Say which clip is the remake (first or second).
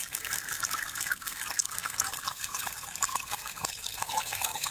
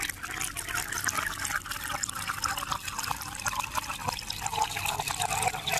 first